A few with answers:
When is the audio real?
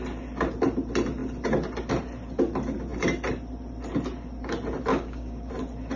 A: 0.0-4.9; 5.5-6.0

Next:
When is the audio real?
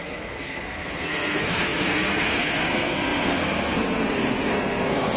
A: none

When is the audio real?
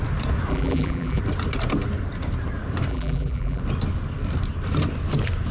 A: 0.0-0.5; 1.2-2.9; 3.6-5.5